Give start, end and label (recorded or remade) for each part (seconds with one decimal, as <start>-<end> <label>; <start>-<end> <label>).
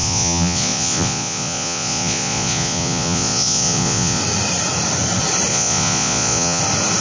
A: 0.0-4.2 remade; 4.2-5.5 recorded; 5.5-6.6 remade; 6.6-7.0 recorded